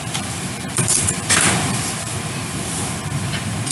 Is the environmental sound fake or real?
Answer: fake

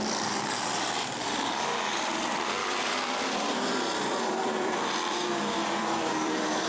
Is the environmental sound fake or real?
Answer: fake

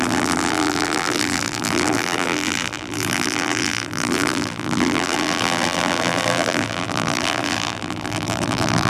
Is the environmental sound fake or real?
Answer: fake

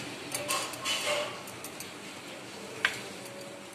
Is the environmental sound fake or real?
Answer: real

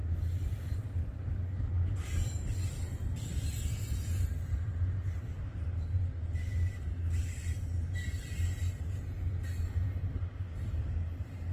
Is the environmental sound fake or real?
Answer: fake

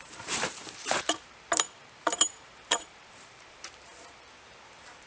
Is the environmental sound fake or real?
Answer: fake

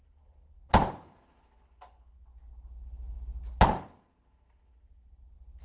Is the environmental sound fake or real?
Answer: real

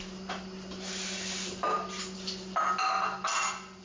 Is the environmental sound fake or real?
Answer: real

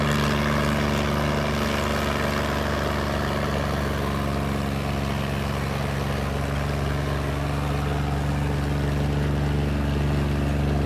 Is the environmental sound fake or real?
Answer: real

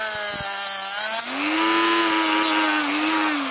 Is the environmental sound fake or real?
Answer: real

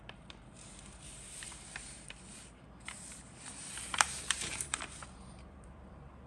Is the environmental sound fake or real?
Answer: fake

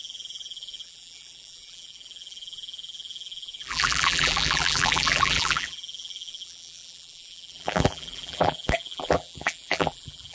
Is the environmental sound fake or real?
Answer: fake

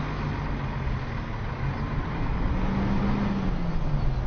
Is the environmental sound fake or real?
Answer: real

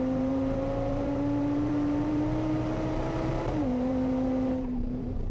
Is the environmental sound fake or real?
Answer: fake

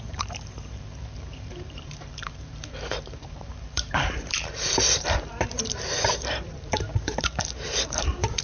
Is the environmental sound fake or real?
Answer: fake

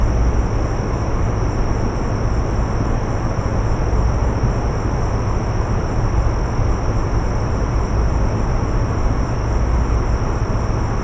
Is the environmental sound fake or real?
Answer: real